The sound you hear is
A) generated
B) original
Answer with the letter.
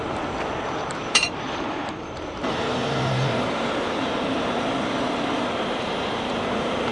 A